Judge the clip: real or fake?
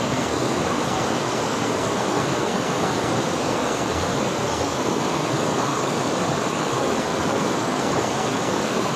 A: fake